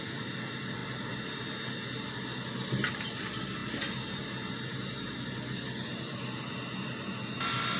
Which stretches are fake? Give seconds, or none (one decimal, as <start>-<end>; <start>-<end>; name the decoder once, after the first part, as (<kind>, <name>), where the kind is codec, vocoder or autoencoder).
none